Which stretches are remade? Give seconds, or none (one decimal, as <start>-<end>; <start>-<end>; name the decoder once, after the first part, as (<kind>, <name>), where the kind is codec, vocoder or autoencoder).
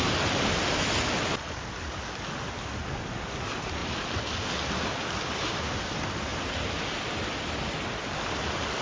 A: none